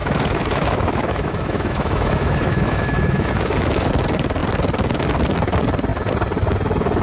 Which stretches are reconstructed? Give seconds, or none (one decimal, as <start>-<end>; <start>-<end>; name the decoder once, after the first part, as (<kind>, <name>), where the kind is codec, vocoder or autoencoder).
0.0-3.9 (autoencoder, DAC-VAE)